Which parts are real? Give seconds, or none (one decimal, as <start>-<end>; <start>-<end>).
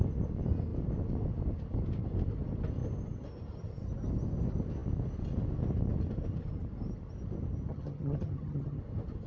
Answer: 0.0-7.7; 8.8-9.3